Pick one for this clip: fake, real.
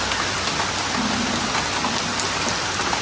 real